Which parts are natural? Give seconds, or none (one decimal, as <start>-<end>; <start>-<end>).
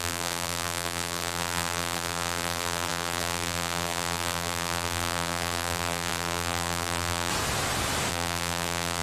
7.3-8.1